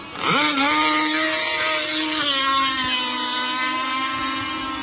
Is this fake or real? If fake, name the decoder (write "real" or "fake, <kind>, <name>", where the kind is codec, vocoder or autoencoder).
real